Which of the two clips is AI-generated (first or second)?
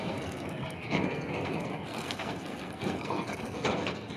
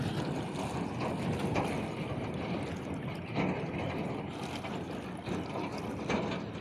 first